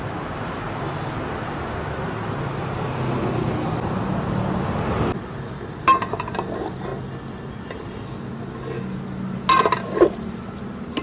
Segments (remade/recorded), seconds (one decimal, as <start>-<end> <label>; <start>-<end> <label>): 0.0-11.0 recorded